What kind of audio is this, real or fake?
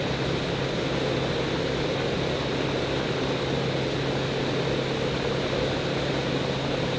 real